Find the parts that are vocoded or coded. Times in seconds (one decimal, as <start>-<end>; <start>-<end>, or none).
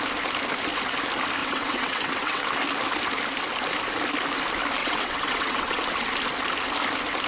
1.4-2.4; 4.8-5.8